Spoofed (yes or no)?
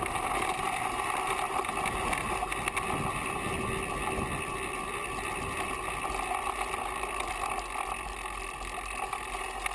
no